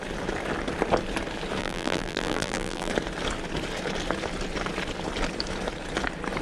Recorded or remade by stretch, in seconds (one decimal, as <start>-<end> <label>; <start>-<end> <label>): 0.0-1.6 recorded; 1.6-2.9 remade; 2.9-6.4 recorded